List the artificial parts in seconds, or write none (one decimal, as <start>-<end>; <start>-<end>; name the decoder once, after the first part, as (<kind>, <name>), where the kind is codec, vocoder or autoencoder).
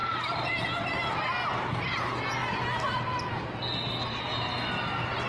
0.0-0.8 (vocoder, BigVGAN v2)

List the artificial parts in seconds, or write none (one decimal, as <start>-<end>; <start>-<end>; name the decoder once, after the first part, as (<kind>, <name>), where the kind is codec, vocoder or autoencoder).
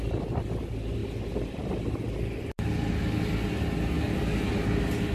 none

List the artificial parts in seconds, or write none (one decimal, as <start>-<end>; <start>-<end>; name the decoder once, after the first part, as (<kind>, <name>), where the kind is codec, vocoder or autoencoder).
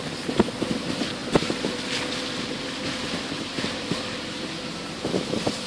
0.0-5.7 (vocoder, BigVGAN v2)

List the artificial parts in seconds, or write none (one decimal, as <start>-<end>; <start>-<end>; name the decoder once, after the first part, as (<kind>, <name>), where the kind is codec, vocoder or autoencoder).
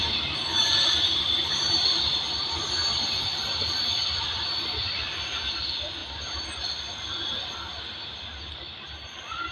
0.0-2.8 (vocoder, BigVGAN v2); 5.6-6.0